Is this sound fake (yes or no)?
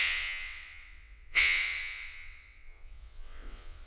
yes